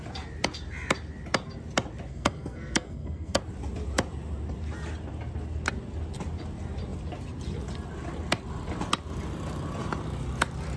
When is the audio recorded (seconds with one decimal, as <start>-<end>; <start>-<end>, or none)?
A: 0.0-2.1; 3.4-10.8

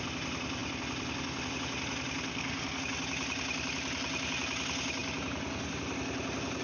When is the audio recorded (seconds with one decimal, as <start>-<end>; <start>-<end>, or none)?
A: 0.0-2.3; 2.8-6.6

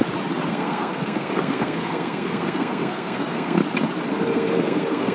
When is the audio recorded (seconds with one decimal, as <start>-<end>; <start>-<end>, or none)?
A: 0.0-0.5; 3.6-4.1

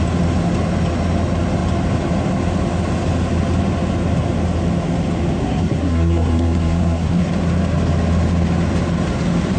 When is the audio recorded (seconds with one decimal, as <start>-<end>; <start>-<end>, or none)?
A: 0.0-5.4; 7.3-9.6

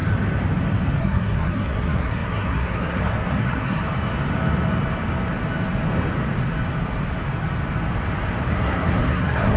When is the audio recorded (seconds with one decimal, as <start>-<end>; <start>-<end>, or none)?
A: 0.0-1.0; 3.8-8.5

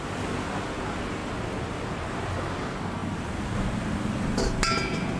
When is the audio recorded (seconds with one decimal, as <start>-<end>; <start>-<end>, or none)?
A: 0.0-5.2